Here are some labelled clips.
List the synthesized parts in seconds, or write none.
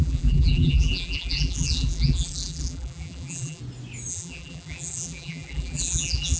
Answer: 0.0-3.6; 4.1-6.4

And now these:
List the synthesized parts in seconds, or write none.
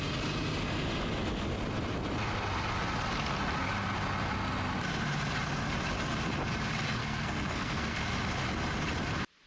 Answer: 7.0-8.0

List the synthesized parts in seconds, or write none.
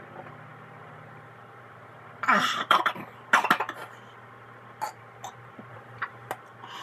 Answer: 0.5-3.0; 5.7-6.3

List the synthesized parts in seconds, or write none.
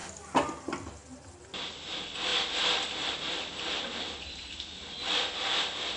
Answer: none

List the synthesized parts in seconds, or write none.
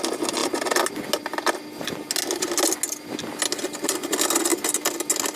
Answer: none